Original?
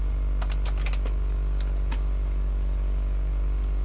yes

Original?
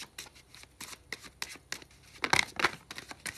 yes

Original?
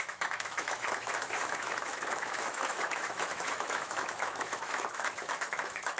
no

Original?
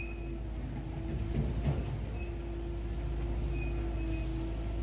yes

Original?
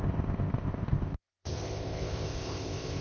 no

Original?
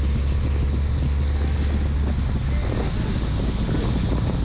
yes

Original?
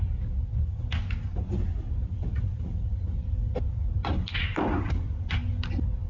yes